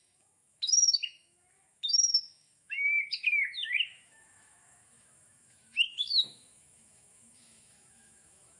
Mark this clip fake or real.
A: fake